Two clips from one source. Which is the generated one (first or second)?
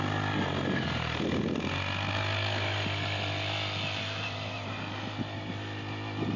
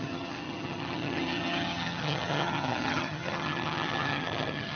second